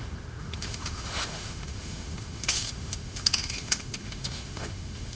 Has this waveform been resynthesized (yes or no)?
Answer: yes